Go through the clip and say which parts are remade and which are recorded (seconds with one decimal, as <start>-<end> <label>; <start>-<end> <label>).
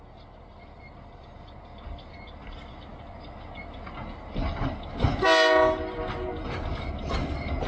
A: 0.0-7.7 recorded